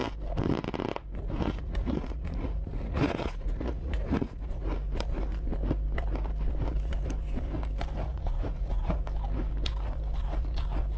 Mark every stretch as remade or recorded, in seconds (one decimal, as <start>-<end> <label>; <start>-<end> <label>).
0.0-1.2 recorded; 1.2-4.7 remade; 4.7-8.0 recorded; 8.0-9.0 remade; 9.0-11.0 recorded